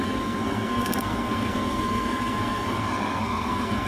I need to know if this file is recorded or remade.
remade